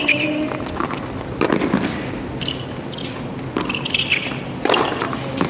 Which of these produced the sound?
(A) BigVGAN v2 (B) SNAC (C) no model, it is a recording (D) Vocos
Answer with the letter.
C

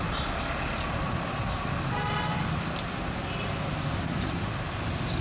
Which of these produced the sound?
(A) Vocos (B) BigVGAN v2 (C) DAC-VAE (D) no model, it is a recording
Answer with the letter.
D